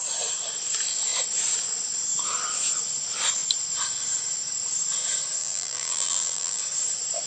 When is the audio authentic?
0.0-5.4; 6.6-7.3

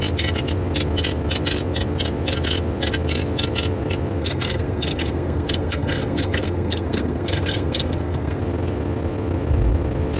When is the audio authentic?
0.0-4.2; 8.4-10.2

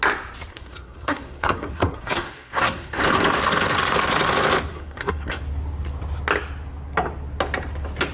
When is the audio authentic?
0.0-0.5; 3.0-4.7; 5.4-8.1

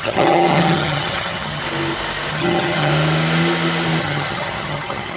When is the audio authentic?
1.6-2.3; 2.9-4.0

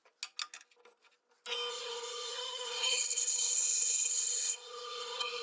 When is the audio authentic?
0.0-1.7

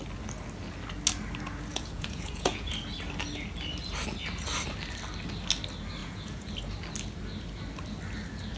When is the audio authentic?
0.0-1.7; 2.7-6.0; 6.5-8.6

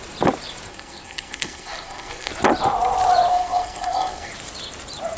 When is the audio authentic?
0.0-0.7; 2.3-3.3; 4.3-5.2

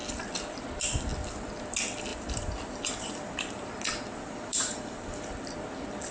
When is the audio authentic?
0.0-2.1; 3.7-4.5; 5.1-6.1